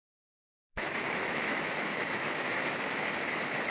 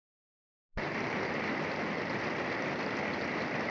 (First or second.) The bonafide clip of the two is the second